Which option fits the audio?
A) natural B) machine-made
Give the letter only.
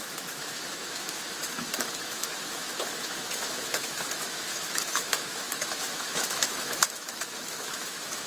B